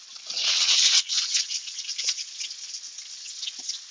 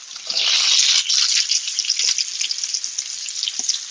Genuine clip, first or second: second